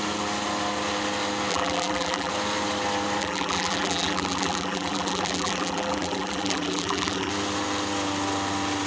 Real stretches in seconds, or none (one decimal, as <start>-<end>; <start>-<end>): 0.0-1.5; 2.3-3.2; 7.3-8.9